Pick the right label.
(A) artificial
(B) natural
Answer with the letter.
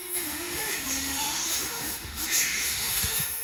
A